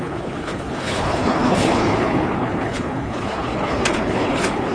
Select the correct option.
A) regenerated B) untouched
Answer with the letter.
A